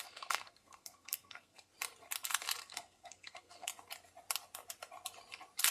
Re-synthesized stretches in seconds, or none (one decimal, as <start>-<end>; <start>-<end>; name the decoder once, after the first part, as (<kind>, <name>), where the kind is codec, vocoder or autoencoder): 0.0-1.7 (codec, SNAC); 2.6-3.7